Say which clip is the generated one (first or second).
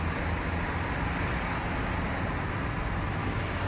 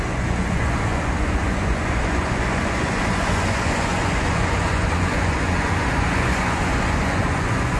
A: second